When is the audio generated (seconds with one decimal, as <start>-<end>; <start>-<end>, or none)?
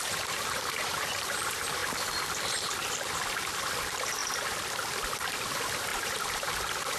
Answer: 0.0-1.8; 3.7-4.2; 5.5-7.0